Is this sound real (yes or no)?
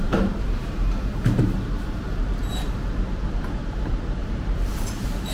no